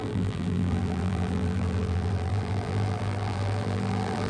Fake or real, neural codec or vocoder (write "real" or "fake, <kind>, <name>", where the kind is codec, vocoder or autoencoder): fake, vocoder, BigVGAN v2